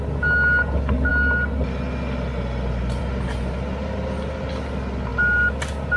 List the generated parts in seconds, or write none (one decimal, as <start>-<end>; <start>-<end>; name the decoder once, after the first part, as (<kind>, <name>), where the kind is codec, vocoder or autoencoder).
none

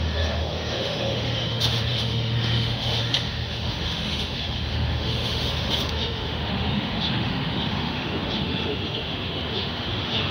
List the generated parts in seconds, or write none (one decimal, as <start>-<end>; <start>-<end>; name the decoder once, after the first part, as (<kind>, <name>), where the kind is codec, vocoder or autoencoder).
0.0-10.3 (autoencoder, DAC-VAE)

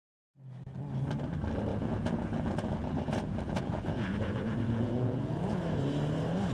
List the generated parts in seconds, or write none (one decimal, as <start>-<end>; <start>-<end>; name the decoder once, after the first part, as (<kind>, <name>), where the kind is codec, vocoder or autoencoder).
1.7-5.6 (vocoder, Vocos)